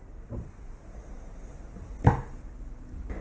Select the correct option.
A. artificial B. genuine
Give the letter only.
B